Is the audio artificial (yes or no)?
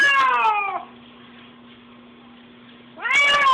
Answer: no